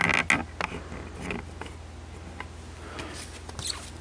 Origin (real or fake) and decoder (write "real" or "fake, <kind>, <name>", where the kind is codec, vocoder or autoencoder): real